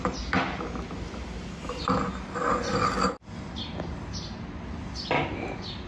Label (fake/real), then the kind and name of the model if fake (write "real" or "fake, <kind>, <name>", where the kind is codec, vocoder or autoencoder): real